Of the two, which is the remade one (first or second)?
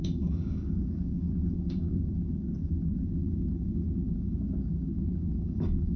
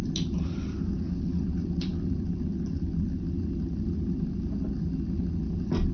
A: first